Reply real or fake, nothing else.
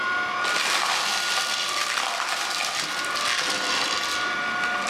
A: real